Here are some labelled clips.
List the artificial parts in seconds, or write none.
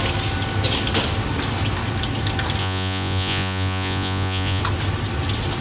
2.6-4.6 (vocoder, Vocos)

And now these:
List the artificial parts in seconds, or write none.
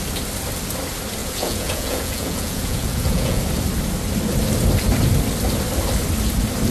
1.2-3.4 (vocoder, Vocos)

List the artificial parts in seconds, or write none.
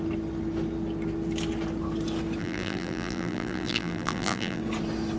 2.4-4.6 (vocoder, BigVGAN v2)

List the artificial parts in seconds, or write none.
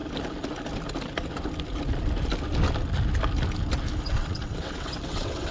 4.2-5.5 (vocoder, WaveNeXt)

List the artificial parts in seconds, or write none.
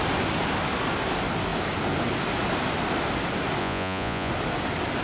3.6-4.3 (vocoder, Vocos)